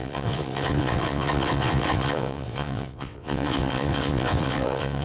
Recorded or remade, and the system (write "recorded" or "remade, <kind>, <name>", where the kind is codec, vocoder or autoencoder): remade, vocoder, WaveNeXt